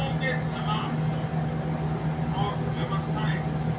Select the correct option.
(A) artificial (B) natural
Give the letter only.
B